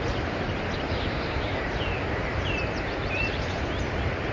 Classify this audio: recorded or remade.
remade